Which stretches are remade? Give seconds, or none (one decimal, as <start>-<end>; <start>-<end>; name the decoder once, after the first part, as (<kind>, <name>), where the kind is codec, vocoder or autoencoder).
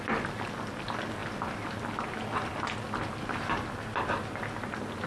none